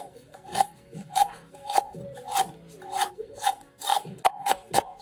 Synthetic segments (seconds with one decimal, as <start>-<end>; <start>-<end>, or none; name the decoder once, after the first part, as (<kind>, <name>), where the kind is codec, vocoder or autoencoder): 0.0-2.0 (codec, SNAC); 3.1-5.0